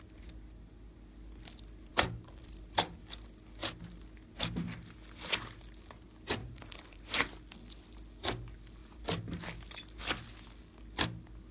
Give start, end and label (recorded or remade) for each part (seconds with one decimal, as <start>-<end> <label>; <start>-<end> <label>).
0.0-1.9 recorded; 1.9-2.6 remade; 2.6-6.4 recorded; 6.4-7.0 remade; 7.0-8.8 recorded; 8.8-9.4 remade; 9.4-11.5 recorded